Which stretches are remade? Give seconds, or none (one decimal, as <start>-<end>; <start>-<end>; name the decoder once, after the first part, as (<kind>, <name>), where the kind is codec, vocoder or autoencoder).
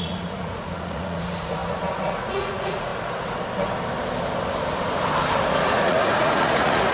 0.0-2.9 (vocoder, Vocos); 5.6-6.9